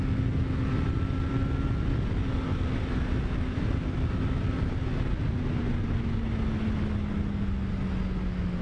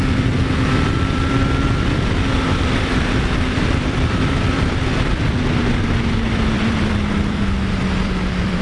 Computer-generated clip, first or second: second